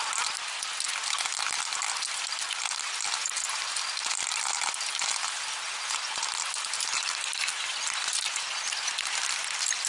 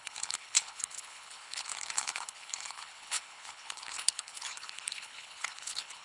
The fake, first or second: second